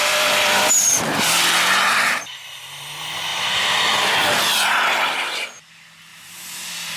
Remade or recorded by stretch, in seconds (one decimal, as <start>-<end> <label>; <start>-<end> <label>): 0.0-0.7 remade; 0.7-7.0 recorded